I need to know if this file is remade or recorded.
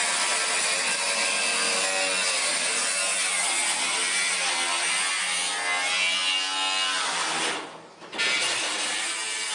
recorded